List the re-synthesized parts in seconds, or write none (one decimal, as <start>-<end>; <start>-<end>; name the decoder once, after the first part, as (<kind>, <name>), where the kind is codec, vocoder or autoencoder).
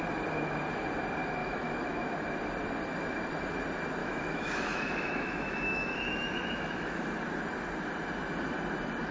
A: 1.4-2.1 (autoencoder, DAC-VAE); 4.0-7.0